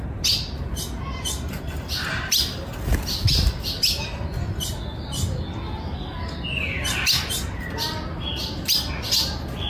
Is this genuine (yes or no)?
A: yes